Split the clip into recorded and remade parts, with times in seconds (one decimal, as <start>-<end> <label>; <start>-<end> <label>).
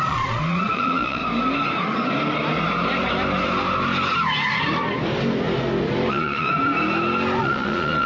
0.0-1.2 remade; 1.2-6.1 recorded; 6.1-6.5 remade; 6.5-7.4 recorded; 7.4-8.1 remade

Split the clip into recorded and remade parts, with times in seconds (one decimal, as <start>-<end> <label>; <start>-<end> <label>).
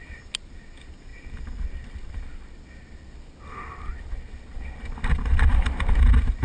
0.0-6.4 recorded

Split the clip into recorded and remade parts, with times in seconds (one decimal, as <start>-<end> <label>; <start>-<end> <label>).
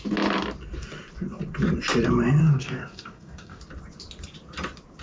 0.0-2.4 recorded; 2.4-3.6 remade; 3.6-5.0 recorded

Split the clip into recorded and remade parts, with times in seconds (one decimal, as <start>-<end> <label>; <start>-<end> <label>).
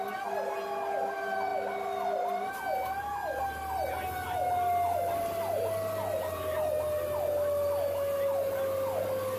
0.0-9.4 recorded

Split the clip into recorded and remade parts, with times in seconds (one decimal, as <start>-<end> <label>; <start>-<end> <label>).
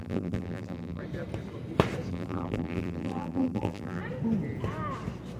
0.0-1.0 remade; 1.0-2.1 recorded; 2.1-4.0 remade; 4.0-5.4 recorded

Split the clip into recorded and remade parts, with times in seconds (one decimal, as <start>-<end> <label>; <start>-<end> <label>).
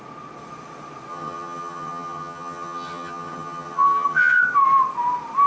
0.0-1.1 recorded; 1.1-4.4 remade; 4.4-5.5 recorded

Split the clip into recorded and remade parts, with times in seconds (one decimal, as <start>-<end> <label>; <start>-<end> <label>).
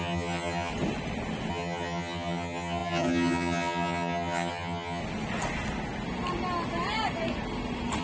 0.0-0.7 remade; 0.7-1.5 recorded; 1.5-5.0 remade; 5.0-8.0 recorded